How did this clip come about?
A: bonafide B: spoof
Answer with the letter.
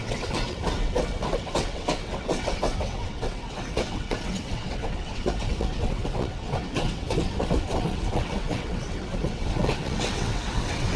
B